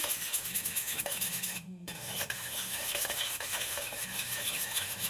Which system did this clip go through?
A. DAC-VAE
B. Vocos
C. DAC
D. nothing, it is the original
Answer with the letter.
A